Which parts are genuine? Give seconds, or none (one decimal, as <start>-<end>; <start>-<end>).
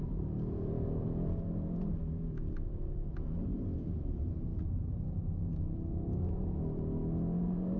none